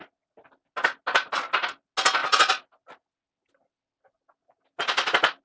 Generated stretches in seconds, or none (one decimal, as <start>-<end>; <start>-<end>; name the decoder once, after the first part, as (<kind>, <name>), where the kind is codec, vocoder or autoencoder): none

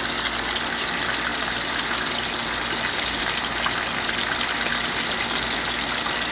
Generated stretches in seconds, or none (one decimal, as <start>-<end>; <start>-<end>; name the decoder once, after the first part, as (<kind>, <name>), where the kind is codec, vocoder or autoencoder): none

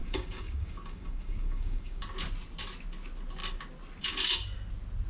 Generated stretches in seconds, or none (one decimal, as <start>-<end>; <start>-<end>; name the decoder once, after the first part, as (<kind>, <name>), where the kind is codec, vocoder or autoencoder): 0.0-2.0 (codec, DAC)

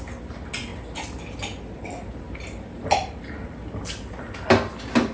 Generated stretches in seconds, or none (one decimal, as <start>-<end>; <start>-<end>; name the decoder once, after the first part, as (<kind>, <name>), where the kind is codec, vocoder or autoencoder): none

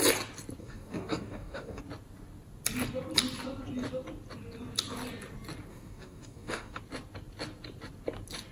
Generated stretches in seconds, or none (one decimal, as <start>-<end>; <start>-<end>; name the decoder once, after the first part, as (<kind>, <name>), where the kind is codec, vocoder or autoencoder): 0.6-1.8 (codec, DAC); 5.7-6.8

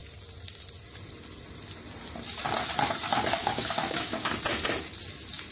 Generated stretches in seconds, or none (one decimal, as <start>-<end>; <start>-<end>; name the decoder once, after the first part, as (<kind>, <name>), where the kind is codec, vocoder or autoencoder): 3.4-4.3 (codec, DAC)